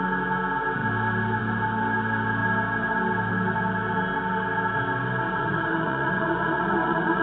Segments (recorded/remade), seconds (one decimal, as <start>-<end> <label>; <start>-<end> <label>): 0.0-5.4 recorded; 5.4-7.2 remade